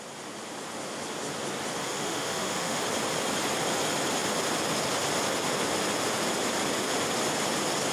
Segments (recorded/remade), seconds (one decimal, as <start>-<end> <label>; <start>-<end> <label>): 0.0-1.8 recorded; 1.8-2.8 remade; 2.8-7.9 recorded